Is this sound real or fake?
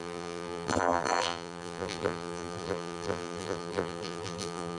fake